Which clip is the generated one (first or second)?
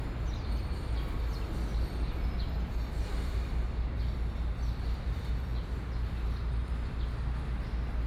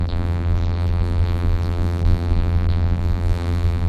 second